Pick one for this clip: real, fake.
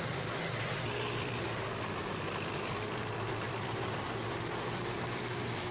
fake